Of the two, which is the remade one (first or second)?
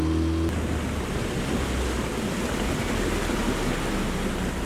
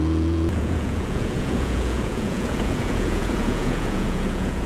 second